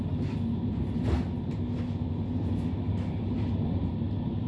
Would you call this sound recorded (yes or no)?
yes